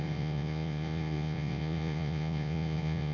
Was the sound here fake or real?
fake